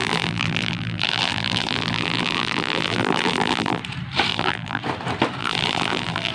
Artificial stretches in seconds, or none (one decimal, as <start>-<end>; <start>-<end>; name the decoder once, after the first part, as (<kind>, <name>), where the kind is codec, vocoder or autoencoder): 0.0-3.8 (vocoder, BigVGAN v2); 4.3-4.8; 5.4-6.3